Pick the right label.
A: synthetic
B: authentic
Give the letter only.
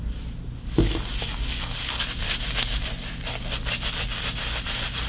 B